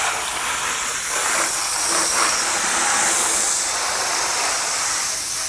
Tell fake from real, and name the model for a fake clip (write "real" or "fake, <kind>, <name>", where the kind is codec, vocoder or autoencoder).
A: fake, vocoder, BigVGAN v2